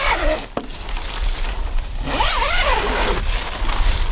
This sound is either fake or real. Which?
real